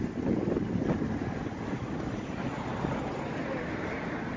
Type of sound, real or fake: real